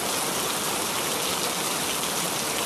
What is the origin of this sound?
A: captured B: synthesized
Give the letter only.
A